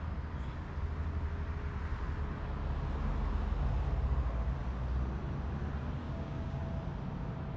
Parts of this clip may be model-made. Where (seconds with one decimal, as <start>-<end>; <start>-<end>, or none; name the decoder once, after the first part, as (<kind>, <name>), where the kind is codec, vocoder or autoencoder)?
6.0-6.6 (codec, DAC)